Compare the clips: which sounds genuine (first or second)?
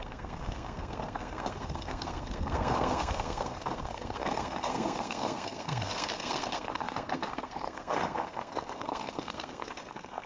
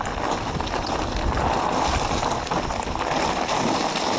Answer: second